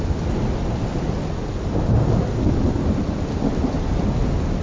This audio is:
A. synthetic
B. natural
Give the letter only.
B